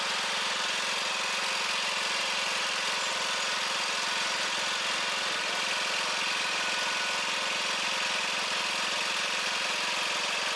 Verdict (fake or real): real